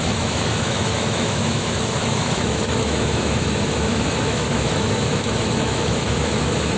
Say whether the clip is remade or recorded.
remade